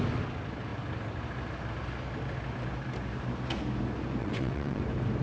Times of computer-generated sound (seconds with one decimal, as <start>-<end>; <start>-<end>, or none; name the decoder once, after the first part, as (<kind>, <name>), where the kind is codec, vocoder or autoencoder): 4.2-4.8 (vocoder, WaveNeXt)